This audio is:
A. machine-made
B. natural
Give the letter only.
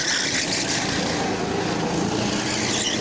B